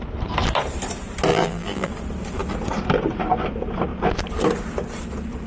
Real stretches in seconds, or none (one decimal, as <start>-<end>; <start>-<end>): 0.0-1.3; 1.9-5.5